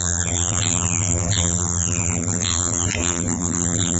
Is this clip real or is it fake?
fake